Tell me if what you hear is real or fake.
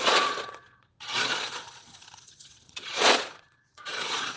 fake